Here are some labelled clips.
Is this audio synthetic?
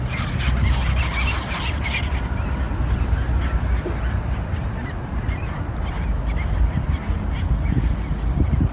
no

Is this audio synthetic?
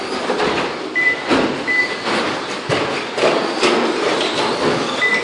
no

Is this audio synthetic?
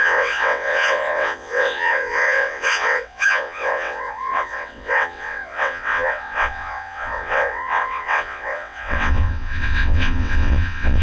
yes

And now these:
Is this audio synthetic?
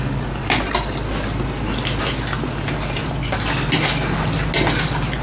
no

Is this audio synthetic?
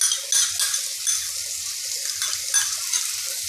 no